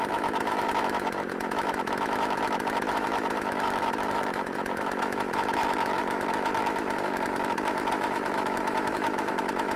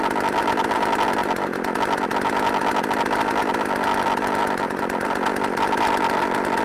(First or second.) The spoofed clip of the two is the first